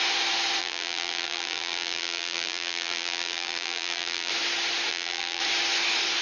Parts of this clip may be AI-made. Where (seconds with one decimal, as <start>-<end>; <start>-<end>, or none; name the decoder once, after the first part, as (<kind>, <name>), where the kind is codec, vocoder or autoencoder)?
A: 0.6-4.3 (vocoder, BigVGAN v2); 4.9-5.4